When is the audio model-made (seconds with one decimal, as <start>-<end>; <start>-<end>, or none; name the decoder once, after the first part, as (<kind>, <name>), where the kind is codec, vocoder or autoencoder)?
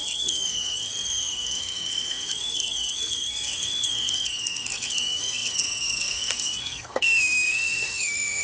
0.0-8.4 (codec, SNAC)